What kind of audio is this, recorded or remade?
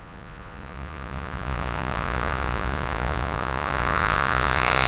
remade